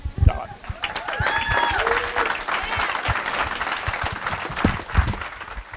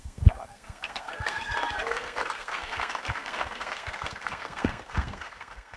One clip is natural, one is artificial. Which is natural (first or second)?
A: first